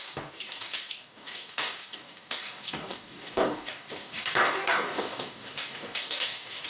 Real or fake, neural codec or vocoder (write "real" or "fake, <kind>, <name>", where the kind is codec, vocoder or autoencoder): fake, codec, DAC